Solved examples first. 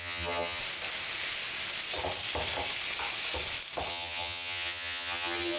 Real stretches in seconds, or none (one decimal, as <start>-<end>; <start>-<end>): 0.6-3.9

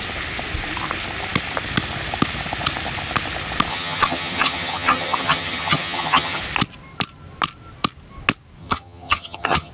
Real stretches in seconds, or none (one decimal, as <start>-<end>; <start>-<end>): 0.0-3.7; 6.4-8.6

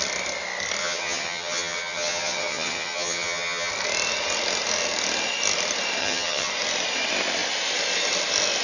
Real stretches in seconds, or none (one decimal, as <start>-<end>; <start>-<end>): 0.0-0.8; 3.7-6.0; 6.5-8.6